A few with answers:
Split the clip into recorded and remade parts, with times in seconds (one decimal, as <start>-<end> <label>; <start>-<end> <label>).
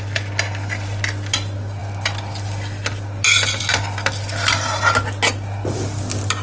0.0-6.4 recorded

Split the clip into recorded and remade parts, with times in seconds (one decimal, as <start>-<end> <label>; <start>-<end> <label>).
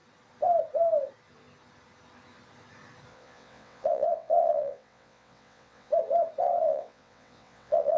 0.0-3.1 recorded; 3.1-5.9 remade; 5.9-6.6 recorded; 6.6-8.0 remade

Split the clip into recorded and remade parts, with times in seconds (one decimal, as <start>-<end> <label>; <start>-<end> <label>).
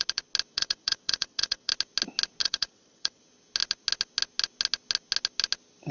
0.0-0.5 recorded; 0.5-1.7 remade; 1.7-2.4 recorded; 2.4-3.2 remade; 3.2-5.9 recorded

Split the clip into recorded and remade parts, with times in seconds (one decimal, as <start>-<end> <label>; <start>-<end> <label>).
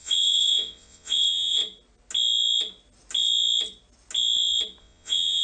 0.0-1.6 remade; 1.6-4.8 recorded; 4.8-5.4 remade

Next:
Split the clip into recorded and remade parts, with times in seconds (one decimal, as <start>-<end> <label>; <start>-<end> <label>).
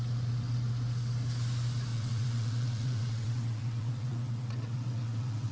0.0-1.9 recorded; 1.9-5.5 remade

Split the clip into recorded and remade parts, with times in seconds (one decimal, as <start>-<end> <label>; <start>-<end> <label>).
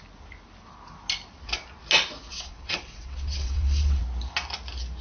0.0-2.3 recorded; 2.3-4.0 remade; 4.0-5.0 recorded